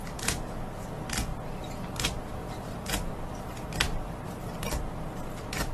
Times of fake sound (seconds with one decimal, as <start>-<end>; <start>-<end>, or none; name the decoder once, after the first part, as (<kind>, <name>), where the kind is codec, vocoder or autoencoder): 2.4-3.1 (vocoder, BigVGAN v2); 3.9-4.8